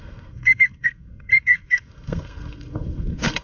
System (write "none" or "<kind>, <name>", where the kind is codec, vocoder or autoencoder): codec, SNAC